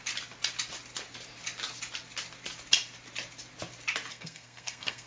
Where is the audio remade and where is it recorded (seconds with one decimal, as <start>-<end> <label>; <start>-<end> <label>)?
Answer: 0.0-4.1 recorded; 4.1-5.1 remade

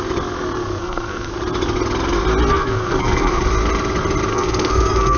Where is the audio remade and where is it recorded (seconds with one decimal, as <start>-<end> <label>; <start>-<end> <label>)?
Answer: 0.0-0.8 recorded; 0.8-1.3 remade; 1.3-2.5 recorded; 2.5-3.4 remade; 3.4-4.3 recorded; 4.3-5.2 remade

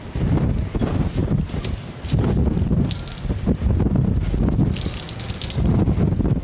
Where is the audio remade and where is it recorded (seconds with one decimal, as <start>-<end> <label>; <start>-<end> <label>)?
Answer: 0.0-6.4 recorded

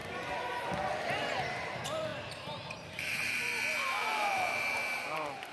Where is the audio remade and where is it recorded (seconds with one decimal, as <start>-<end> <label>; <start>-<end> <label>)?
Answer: 0.0-1.5 recorded; 1.5-5.5 remade

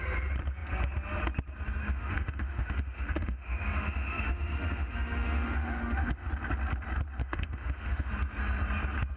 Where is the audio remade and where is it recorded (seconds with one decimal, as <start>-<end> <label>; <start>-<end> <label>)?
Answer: 0.0-1.8 recorded; 1.8-6.3 remade; 6.3-7.2 recorded; 7.2-8.1 remade; 8.1-9.2 recorded